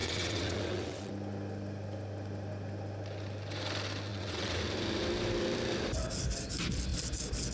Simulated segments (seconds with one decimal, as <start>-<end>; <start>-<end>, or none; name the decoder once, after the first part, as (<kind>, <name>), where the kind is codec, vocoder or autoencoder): 0.0-1.1 (vocoder, WaveNeXt); 4.1-4.6